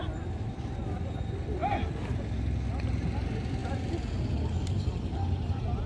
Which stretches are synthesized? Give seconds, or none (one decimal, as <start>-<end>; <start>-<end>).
none